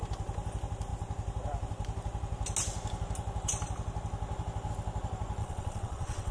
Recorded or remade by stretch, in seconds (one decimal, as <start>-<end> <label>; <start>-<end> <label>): 0.0-5.4 recorded; 5.4-6.3 remade